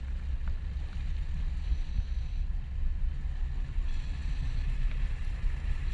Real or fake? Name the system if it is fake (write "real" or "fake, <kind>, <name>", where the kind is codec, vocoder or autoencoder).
real